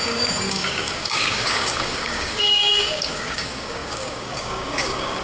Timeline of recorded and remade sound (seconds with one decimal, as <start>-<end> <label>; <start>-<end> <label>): 0.0-5.2 remade